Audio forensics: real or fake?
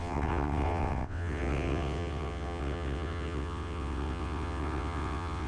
fake